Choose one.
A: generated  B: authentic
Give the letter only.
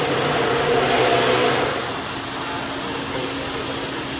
B